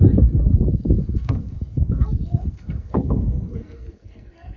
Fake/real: fake